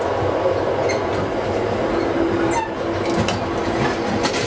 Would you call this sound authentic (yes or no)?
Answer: yes